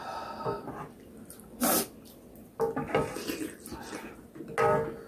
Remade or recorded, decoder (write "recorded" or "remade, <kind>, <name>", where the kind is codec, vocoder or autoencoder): recorded